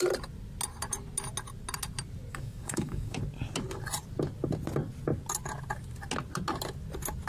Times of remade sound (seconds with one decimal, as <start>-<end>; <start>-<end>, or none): 2.3-3.2

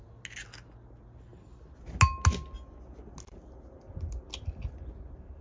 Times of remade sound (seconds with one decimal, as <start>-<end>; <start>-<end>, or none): none

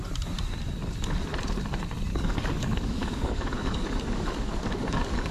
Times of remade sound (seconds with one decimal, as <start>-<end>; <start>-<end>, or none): 2.1-5.3

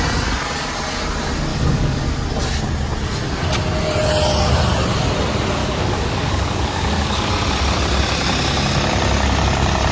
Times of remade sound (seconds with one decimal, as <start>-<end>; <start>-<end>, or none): 1.5-2.0; 5.6-7.3

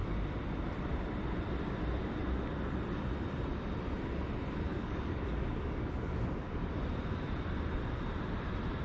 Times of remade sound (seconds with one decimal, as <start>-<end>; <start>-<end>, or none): 4.7-6.8

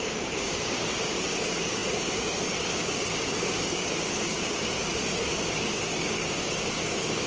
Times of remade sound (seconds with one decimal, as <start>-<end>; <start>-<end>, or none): 0.0-7.3

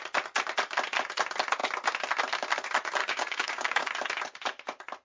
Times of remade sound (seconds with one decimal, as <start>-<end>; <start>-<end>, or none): 3.0-3.9